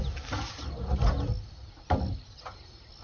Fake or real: real